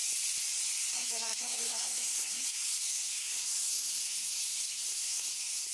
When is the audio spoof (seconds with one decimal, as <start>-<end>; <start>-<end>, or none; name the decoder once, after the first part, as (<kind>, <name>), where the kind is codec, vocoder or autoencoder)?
0.9-5.7 (codec, SNAC)

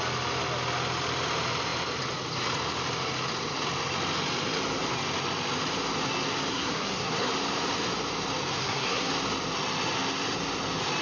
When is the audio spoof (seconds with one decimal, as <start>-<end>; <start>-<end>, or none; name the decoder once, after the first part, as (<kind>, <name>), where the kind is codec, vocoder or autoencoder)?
6.5-7.3 (codec, SNAC); 8.6-9.1